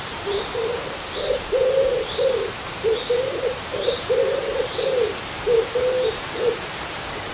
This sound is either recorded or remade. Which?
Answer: remade